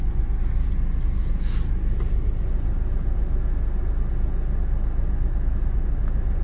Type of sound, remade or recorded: recorded